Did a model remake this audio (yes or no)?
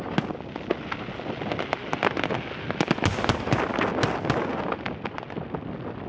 no